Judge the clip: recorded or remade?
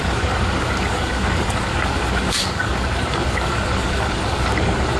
remade